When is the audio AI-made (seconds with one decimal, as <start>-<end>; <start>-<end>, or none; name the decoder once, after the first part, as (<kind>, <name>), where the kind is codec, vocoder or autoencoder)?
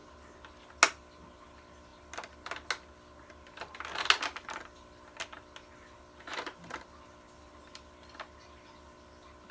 none